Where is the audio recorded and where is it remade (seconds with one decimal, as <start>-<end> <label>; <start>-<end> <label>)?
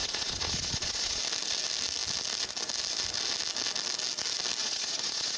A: 0.0-1.2 remade; 1.2-4.6 recorded; 4.6-5.4 remade